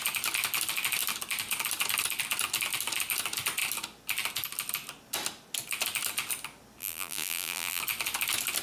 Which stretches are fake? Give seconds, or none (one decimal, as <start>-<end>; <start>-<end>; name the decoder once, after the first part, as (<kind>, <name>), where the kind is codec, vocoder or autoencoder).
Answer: 6.8-7.8 (vocoder, BigVGAN v2)